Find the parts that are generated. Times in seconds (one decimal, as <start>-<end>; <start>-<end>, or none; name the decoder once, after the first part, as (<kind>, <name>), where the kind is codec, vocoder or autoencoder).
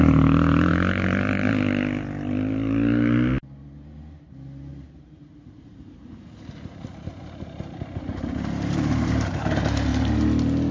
0.0-0.7 (vocoder, BigVGAN v2); 4.7-9.9